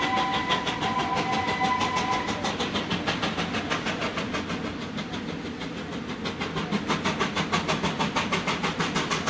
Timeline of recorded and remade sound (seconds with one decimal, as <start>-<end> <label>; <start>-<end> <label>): 0.0-9.3 recorded